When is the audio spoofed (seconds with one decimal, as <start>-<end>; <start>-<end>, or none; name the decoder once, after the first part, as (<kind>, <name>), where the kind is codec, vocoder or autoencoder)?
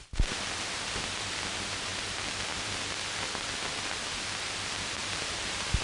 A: 5.0-5.8 (vocoder, BigVGAN v2)